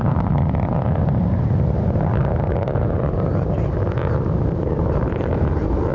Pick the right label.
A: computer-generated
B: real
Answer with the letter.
A